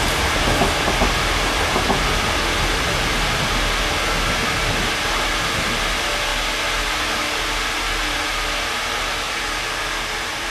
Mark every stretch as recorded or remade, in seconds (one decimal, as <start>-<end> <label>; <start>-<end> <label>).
0.0-10.5 recorded